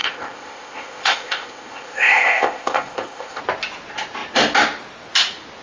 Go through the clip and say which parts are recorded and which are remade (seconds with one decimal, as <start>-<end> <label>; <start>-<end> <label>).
0.0-3.4 remade; 3.4-5.6 recorded